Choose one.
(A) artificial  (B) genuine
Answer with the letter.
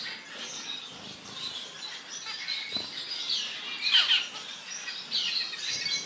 B